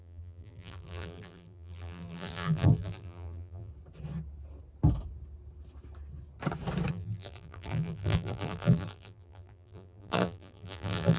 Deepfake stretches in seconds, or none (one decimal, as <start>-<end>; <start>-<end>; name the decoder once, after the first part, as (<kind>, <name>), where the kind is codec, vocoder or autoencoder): 0.0-3.7 (vocoder, BigVGAN v2); 6.9-11.2